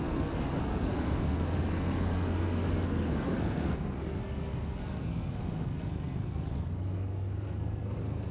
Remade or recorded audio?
remade